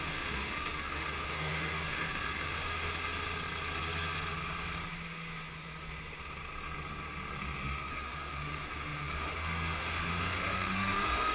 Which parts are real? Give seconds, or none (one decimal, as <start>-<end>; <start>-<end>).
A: 3.1-7.9